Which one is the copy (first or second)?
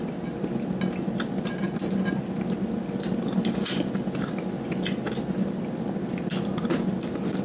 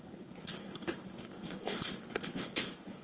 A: second